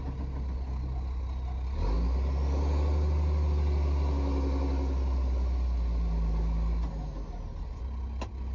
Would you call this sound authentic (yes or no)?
yes